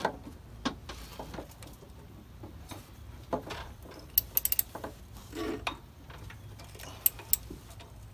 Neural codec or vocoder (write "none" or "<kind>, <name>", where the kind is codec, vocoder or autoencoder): none